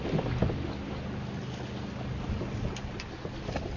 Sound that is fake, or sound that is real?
real